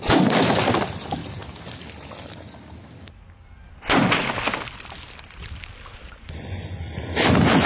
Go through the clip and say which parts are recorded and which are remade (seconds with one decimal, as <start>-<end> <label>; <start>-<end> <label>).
0.0-5.9 recorded; 5.9-6.8 remade; 6.8-7.7 recorded